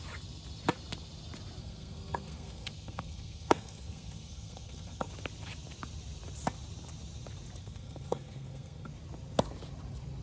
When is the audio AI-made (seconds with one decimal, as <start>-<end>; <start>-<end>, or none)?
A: 1.6-5.1; 7.6-8.9